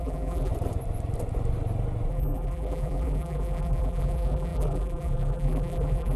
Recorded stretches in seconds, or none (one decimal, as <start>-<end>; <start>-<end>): 0.5-2.1